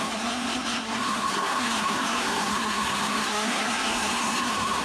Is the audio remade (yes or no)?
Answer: yes